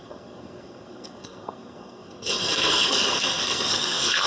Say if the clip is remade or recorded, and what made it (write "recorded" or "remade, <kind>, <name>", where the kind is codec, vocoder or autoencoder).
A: remade, codec, SNAC